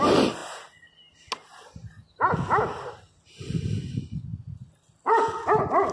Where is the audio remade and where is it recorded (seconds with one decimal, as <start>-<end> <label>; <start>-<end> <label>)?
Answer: 0.0-5.9 recorded